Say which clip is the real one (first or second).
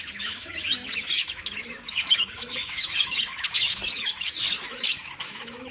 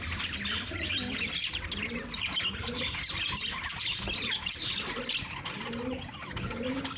second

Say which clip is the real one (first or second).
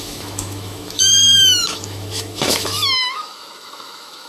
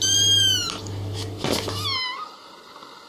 second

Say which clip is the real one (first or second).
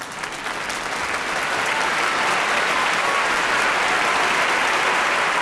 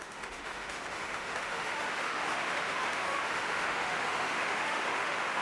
first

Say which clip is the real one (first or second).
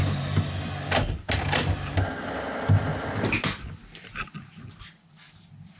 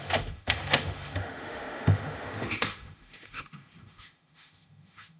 first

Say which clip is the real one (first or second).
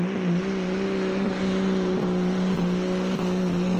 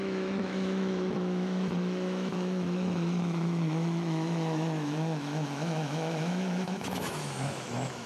first